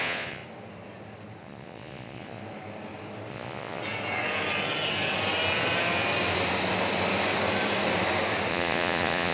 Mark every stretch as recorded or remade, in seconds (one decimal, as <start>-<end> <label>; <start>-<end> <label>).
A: 0.0-0.4 remade; 0.4-1.4 recorded; 1.4-2.4 remade; 2.4-3.3 recorded; 3.3-3.8 remade; 3.8-8.5 recorded; 8.5-9.3 remade